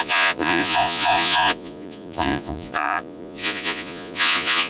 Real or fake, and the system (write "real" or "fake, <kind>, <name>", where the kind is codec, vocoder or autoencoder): fake, vocoder, Vocos